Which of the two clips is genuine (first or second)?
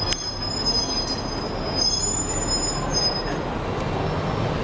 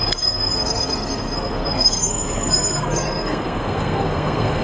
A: first